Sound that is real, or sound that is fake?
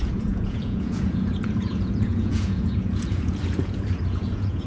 fake